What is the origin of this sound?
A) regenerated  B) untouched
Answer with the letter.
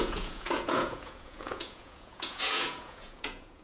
A